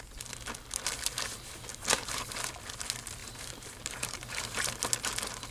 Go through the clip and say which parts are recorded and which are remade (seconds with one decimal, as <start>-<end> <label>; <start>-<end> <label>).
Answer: 0.0-1.7 recorded; 1.7-2.2 remade; 2.2-3.2 recorded; 3.2-4.7 remade; 4.7-5.5 recorded